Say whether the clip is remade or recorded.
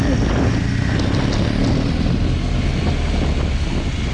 recorded